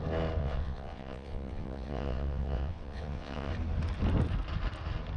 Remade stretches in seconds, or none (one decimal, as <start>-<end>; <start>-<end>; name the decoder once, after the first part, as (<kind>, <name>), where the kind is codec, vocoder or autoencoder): 0.4-3.5 (vocoder, WaveNeXt)